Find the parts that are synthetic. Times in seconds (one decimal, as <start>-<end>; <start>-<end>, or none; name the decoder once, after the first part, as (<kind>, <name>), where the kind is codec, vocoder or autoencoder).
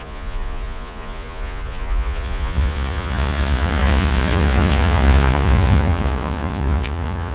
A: 0.0-7.3 (vocoder, Vocos)